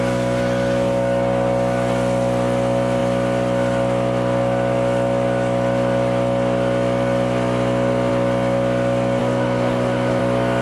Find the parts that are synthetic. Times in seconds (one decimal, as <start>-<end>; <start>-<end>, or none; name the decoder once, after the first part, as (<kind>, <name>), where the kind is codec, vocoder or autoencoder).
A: 9.2-10.2 (autoencoder, DAC-VAE)